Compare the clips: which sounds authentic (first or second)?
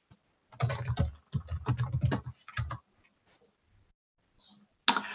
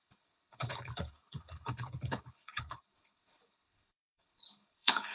first